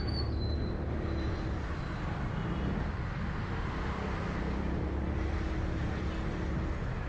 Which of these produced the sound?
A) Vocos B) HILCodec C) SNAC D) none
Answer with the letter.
D